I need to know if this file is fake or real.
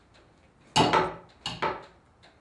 real